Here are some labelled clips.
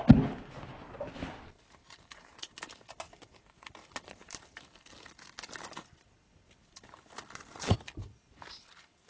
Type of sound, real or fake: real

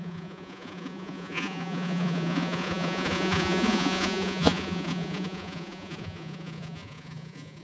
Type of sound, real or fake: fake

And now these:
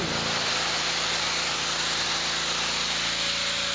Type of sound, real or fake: real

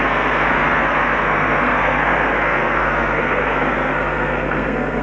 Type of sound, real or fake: fake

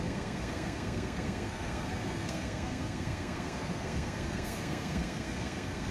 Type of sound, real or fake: fake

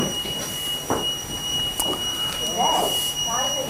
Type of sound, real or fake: fake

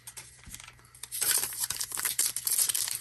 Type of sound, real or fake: fake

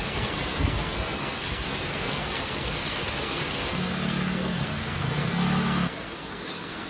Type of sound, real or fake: fake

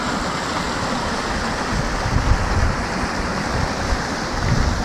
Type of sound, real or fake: real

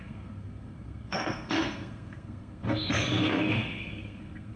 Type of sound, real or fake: fake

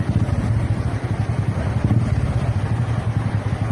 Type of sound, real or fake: real